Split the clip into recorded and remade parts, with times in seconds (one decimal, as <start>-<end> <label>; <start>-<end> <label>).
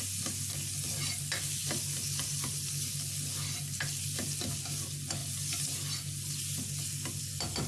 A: 0.0-7.7 recorded